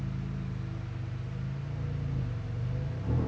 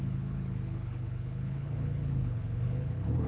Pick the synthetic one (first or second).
second